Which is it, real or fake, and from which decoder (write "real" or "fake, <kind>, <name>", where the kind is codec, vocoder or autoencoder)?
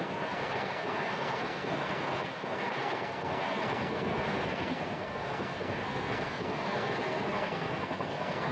fake, codec, SNAC